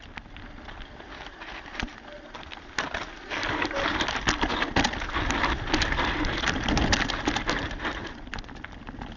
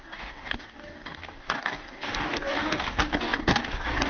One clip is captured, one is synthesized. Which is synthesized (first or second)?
second